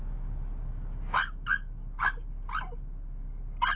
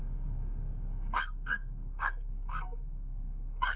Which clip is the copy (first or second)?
second